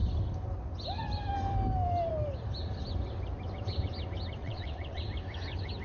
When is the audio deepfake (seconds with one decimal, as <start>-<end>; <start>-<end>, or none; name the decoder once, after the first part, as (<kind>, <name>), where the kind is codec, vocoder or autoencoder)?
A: 4.4-5.0 (vocoder, WaveNeXt)